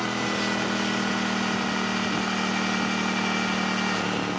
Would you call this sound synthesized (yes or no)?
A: no